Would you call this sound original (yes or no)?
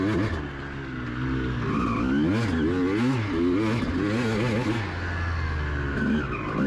yes